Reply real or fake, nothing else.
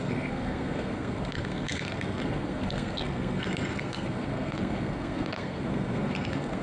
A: fake